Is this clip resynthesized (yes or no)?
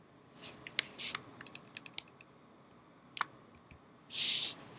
no